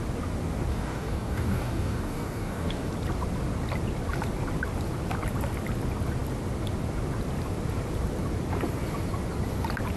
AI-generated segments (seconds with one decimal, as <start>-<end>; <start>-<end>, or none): 0.7-2.9